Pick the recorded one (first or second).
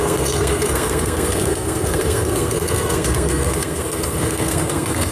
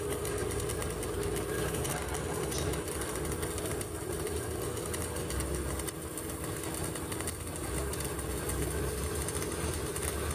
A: second